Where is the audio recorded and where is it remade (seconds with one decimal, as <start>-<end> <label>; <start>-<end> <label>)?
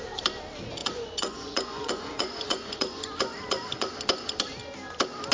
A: 0.0-0.8 recorded; 0.8-3.9 remade; 3.9-5.3 recorded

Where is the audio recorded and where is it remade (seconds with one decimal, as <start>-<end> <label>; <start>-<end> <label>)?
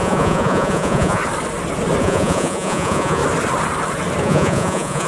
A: 0.0-1.2 remade; 1.2-2.0 recorded; 2.0-3.2 remade; 3.2-4.2 recorded; 4.2-5.1 remade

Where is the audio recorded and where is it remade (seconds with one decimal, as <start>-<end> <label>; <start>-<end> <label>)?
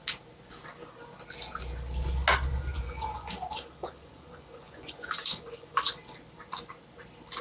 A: 0.0-2.7 recorded; 2.7-3.4 remade; 3.4-3.8 recorded; 3.8-5.9 remade; 5.9-7.4 recorded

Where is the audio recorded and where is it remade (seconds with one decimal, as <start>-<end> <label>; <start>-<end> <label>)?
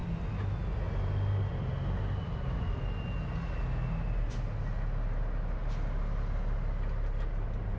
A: 0.0-7.8 recorded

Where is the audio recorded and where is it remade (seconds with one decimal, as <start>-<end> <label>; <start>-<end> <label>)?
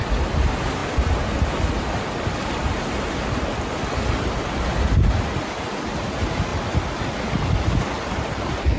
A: 0.0-8.8 recorded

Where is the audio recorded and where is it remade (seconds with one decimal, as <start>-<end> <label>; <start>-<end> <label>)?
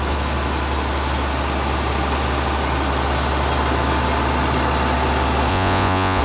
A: 0.0-5.5 recorded; 5.5-6.2 remade